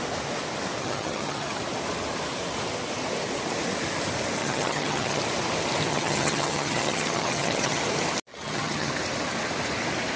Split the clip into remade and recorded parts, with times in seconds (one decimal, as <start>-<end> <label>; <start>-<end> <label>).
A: 0.0-0.8 recorded; 0.8-1.6 remade; 1.6-4.4 recorded; 4.4-5.2 remade; 5.2-5.9 recorded; 5.9-7.8 remade; 7.8-8.3 recorded; 8.3-8.9 remade; 8.9-10.2 recorded